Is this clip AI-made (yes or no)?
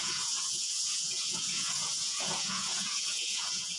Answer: yes